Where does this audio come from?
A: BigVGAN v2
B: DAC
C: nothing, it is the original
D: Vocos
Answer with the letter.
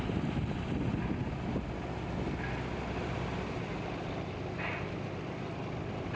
C